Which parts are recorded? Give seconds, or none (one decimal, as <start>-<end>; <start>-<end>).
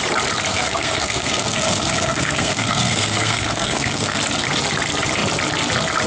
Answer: 0.0-0.5; 4.2-6.1